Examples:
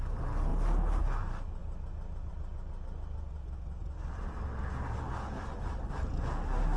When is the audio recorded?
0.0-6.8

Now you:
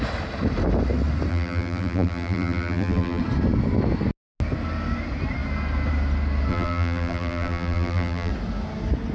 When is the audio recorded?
0.0-1.3; 3.2-6.5; 8.3-9.1

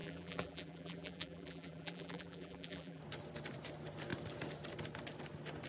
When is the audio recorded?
3.0-5.7

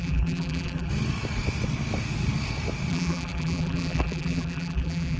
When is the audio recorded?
0.9-2.9